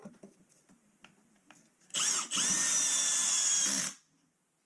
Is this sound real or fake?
real